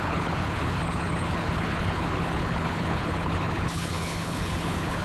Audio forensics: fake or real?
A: fake